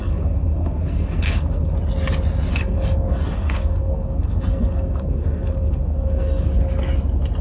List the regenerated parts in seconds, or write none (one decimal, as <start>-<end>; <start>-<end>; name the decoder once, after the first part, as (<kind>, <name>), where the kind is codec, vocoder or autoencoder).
0.0-1.7 (codec, SNAC); 2.5-6.5